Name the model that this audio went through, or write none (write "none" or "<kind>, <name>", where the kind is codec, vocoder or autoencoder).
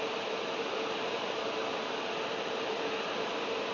none